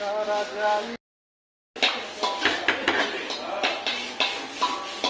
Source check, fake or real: real